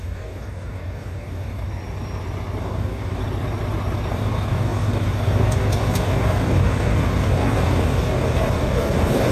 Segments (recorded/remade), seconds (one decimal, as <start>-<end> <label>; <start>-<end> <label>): 0.0-1.7 remade; 1.7-2.6 recorded; 2.6-3.2 remade; 3.2-4.1 recorded; 4.1-9.3 remade